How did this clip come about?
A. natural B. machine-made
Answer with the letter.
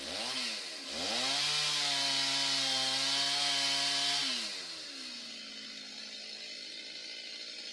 A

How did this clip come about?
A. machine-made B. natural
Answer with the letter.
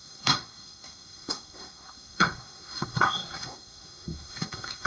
A